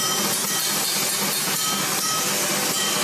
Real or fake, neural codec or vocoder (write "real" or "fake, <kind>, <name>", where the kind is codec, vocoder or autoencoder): real